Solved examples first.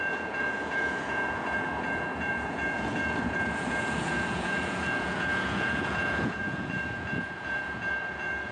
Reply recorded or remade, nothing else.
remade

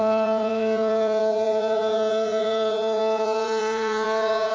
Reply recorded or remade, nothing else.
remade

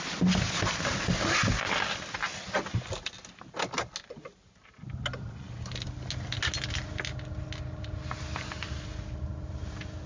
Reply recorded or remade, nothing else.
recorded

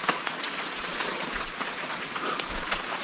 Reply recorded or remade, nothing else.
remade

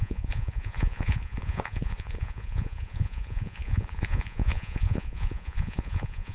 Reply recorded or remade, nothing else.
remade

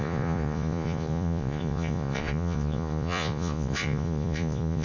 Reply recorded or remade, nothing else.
remade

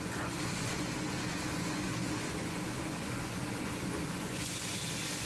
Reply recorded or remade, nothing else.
remade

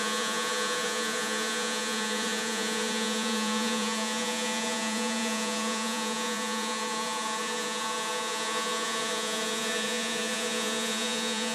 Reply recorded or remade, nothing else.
remade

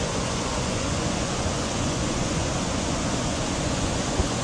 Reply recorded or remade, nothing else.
remade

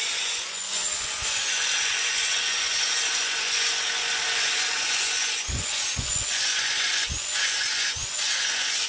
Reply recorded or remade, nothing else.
remade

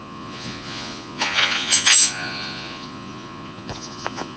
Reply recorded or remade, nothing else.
remade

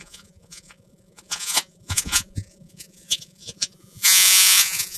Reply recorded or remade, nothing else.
remade